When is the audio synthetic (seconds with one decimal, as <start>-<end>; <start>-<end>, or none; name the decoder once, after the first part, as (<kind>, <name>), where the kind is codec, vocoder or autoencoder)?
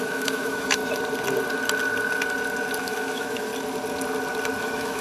0.0-0.8 (autoencoder, DAC-VAE); 2.8-3.5; 4.6-5.0